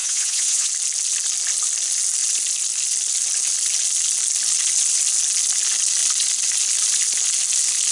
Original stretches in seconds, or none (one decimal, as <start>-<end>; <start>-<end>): 0.7-7.9